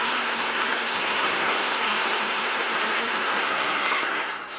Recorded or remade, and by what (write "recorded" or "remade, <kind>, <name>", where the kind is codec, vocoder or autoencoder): remade, codec, SNAC